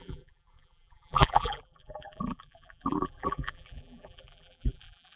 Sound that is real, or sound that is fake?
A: fake